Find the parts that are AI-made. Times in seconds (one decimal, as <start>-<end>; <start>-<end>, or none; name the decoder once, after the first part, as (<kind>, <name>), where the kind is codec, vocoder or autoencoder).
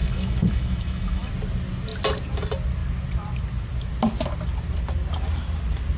0.0-1.3 (autoencoder, DAC-VAE)